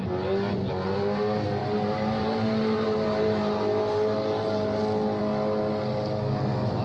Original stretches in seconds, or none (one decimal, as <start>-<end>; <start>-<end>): 0.0-1.6; 4.8-6.8

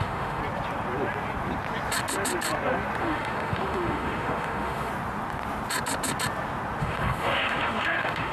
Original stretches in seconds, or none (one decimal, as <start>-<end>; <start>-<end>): 0.4-3.0; 4.9-6.8

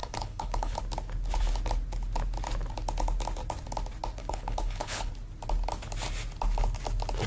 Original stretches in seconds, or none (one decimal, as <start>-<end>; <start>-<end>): 0.8-4.2; 5.1-7.3

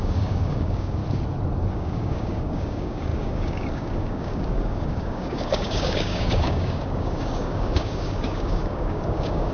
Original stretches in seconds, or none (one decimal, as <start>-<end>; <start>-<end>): 1.0-1.7

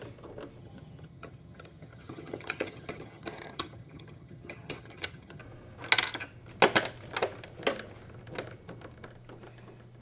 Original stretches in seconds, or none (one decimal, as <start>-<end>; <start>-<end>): 0.0-0.6; 5.4-10.0

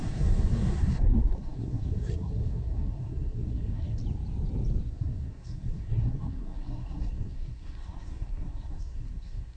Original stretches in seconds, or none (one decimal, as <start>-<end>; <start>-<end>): 4.0-4.9

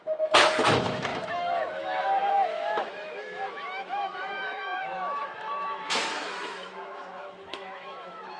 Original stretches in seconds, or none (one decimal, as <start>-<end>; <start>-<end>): none

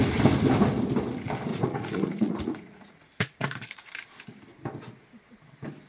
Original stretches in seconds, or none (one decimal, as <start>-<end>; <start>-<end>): 0.0-1.5; 3.9-5.9